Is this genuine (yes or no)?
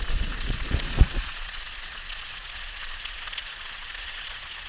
no